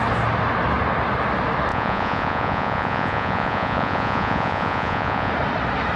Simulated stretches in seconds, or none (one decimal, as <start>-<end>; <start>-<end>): 1.7-5.3